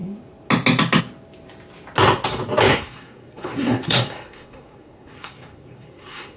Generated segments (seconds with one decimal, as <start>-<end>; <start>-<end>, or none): 2.7-6.4

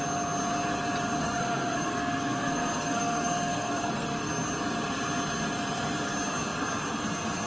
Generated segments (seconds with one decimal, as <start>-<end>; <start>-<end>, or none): 1.2-4.3

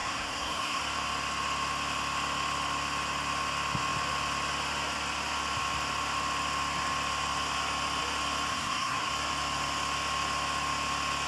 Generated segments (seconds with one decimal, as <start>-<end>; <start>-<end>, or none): 0.0-0.8; 8.5-9.1

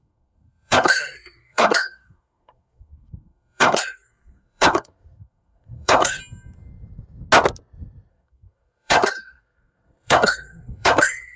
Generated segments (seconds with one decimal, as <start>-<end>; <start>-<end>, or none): 0.0-6.2; 8.1-11.4

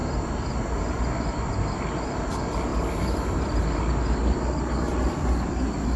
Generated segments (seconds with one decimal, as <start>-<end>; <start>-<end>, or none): none

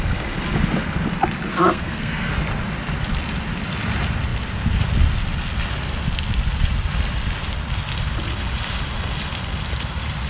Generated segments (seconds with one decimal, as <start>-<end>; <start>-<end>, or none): 1.5-2.3

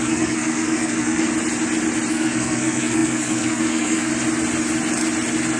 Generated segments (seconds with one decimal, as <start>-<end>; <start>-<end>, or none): 0.0-1.3; 2.1-4.1